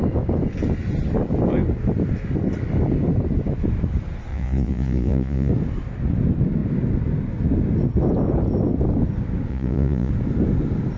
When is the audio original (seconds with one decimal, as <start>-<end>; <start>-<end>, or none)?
0.0-4.3; 5.5-9.5; 10.1-11.0